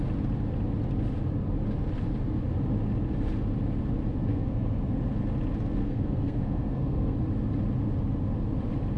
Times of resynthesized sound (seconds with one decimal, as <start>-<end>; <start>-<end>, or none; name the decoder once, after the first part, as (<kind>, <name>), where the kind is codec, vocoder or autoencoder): 4.3-4.9 (codec, SNAC); 5.8-7.2